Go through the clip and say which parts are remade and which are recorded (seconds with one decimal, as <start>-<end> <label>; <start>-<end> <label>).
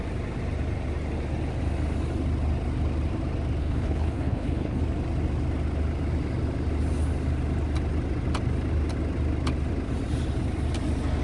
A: 0.0-3.6 recorded; 3.6-4.8 remade; 4.8-11.2 recorded